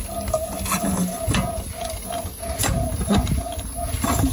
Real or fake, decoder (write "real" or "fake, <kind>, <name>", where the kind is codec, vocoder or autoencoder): real